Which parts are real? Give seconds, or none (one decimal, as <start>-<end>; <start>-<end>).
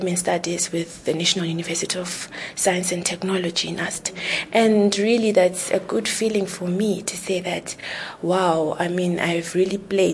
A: 0.0-0.8; 1.4-5.0; 5.6-7.8